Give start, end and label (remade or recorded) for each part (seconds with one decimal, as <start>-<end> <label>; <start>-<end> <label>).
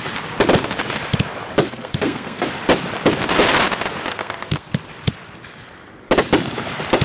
0.0-1.7 recorded; 1.7-2.5 remade; 2.5-4.1 recorded; 4.1-4.7 remade; 4.7-7.0 recorded